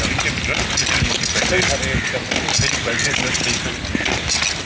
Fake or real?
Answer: real